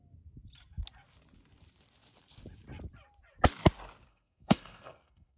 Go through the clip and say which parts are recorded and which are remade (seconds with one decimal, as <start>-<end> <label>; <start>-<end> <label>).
0.0-4.1 recorded; 4.1-5.4 remade